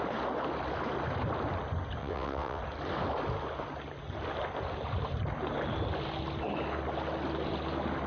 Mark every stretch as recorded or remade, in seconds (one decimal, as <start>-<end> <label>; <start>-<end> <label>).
0.0-2.0 recorded; 2.0-2.6 remade; 2.6-8.1 recorded